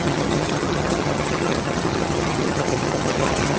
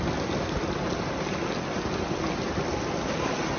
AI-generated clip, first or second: first